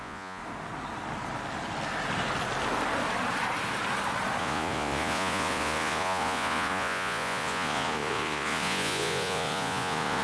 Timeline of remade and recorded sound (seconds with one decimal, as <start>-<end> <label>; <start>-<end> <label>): 0.0-0.4 remade; 0.4-4.4 recorded; 4.4-10.2 remade